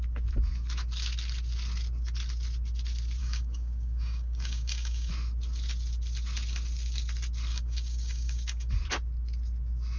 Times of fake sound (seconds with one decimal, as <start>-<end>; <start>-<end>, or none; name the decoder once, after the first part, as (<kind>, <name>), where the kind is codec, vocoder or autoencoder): 3.2-5.1 (codec, DAC); 7.5-8.7